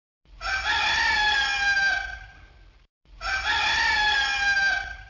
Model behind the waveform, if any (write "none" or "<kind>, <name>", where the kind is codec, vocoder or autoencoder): none